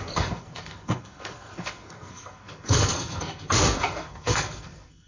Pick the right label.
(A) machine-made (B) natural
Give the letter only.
A